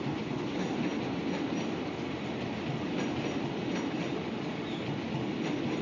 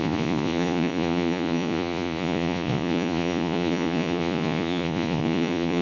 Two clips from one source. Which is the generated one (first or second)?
second